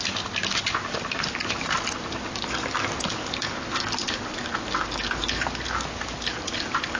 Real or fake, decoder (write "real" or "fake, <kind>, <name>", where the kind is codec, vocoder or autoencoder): real